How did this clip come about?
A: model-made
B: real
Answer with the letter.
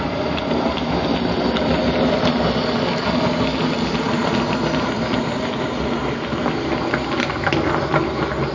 B